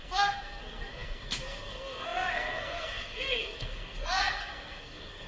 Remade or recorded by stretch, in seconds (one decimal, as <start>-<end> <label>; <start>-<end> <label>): 0.0-5.3 remade